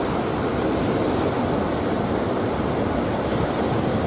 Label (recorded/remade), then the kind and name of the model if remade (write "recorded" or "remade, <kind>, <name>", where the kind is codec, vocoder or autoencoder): recorded